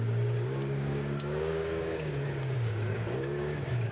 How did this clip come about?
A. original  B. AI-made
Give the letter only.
B